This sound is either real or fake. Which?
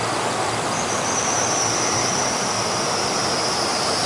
real